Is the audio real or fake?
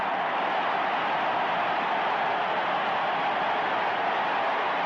real